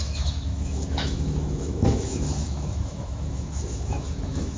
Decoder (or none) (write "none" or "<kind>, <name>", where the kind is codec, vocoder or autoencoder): autoencoder, DAC-VAE